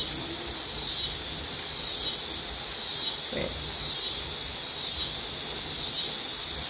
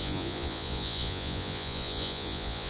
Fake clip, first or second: second